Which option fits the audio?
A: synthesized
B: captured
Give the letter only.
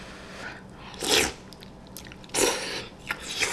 B